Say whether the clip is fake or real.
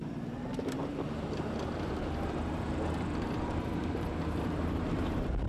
fake